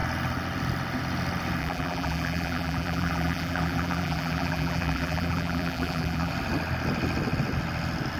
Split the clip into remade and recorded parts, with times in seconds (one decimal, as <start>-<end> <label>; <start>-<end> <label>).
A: 0.0-1.6 recorded; 1.6-6.3 remade; 6.3-8.2 recorded